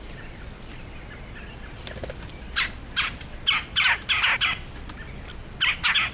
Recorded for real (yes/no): yes